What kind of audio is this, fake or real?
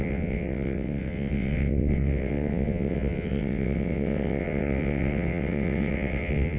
fake